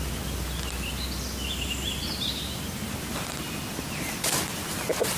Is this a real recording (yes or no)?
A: yes